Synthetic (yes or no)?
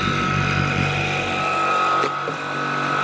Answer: no